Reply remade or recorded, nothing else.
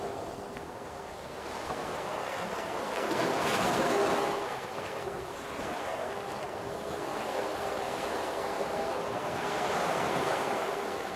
remade